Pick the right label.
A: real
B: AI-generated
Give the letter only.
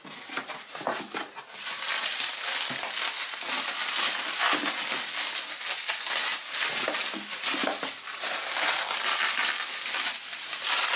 A